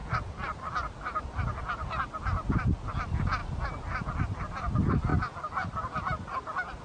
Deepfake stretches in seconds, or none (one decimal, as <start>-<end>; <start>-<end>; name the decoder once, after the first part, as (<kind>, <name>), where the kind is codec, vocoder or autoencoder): none